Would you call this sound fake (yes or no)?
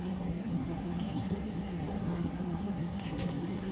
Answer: yes